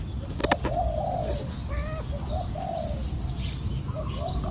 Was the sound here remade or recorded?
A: recorded